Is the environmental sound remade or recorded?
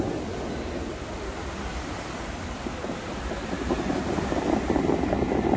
recorded